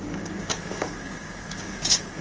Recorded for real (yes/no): no